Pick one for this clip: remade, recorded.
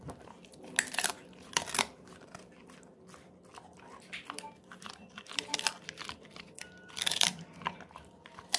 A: recorded